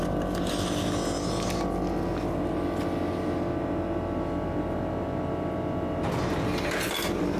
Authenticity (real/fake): real